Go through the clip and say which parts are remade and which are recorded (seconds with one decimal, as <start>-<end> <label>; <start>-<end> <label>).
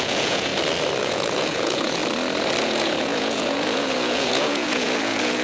0.0-0.5 remade; 0.5-1.0 recorded; 1.0-2.0 remade; 2.0-2.6 recorded; 2.6-5.4 remade